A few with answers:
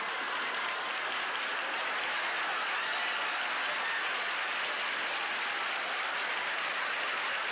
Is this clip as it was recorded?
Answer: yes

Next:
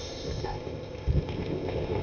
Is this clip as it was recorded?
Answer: no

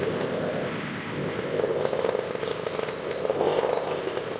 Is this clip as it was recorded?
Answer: no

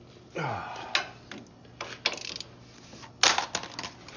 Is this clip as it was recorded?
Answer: yes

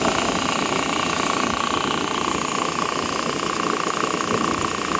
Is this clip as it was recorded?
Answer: yes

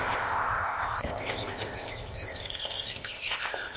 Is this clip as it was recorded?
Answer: no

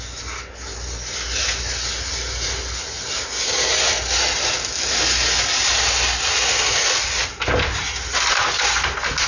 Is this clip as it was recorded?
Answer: yes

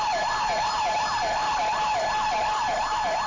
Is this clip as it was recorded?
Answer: yes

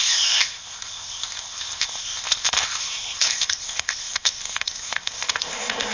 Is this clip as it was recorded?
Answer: no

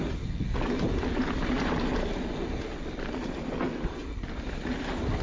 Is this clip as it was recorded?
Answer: yes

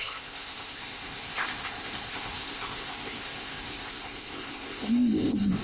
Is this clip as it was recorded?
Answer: no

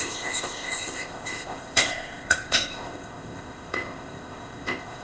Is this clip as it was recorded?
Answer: no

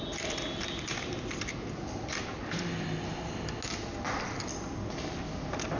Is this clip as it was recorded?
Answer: yes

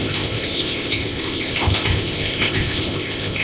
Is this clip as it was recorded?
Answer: no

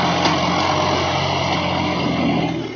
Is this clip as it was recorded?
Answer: yes